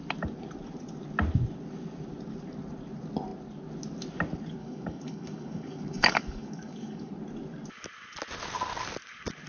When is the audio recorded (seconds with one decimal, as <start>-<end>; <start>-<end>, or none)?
0.0-4.6; 7.1-9.5